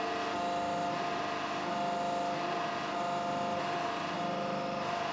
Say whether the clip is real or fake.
real